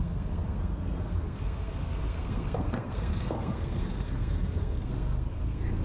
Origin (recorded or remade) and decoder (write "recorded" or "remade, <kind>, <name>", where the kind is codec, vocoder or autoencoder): remade, codec, SNAC